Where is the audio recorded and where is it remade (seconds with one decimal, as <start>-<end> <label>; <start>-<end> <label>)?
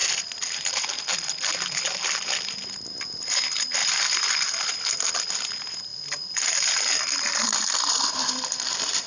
0.0-0.9 remade; 0.9-3.8 recorded; 3.8-4.7 remade; 4.7-5.9 recorded; 5.9-9.1 remade